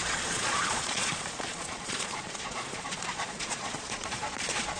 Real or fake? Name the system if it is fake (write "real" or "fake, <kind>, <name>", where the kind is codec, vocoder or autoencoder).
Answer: fake, vocoder, Vocos